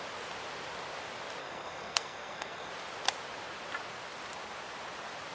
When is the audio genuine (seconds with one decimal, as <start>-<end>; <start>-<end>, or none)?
0.0-1.4; 2.7-5.3